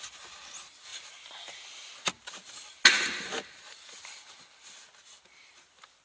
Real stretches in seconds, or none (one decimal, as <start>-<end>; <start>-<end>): 0.0-6.0